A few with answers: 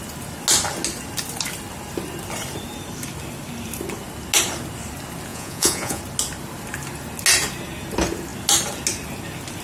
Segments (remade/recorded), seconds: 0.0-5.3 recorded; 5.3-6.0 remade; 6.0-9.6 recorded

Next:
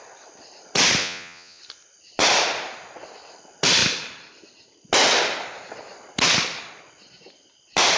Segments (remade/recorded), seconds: 0.0-1.0 recorded; 1.0-1.6 remade; 1.6-8.0 recorded

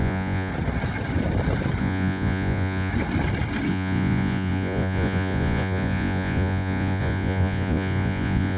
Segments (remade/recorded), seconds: 0.0-0.5 remade; 0.5-1.8 recorded; 1.8-2.9 remade; 2.9-3.7 recorded; 3.7-8.6 remade

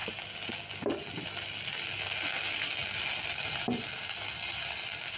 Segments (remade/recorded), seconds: 0.0-5.2 recorded

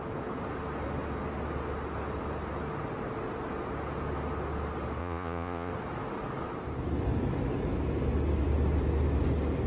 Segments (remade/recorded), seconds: 0.0-5.0 recorded; 5.0-5.7 remade; 5.7-9.7 recorded

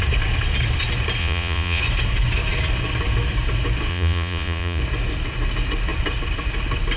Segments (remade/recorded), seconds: 0.0-1.2 recorded; 1.2-1.8 remade; 1.8-3.9 recorded; 3.9-4.8 remade; 4.8-7.0 recorded

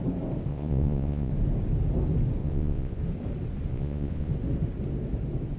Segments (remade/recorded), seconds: 0.0-0.5 recorded; 0.5-1.3 remade; 1.3-2.4 recorded; 2.4-3.0 remade; 3.0-3.7 recorded; 3.7-4.3 remade; 4.3-5.6 recorded